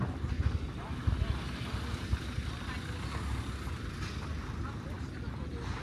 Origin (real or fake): real